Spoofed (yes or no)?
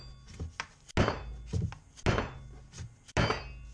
no